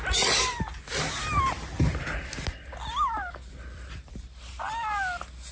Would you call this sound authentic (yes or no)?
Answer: yes